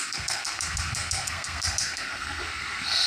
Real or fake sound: fake